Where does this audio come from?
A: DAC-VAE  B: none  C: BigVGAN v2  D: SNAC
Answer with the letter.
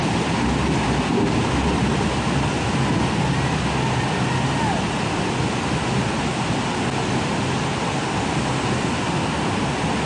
B